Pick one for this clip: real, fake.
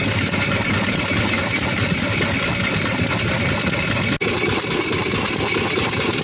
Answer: real